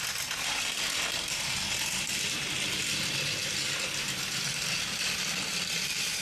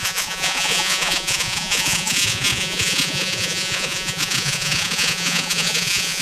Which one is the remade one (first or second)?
second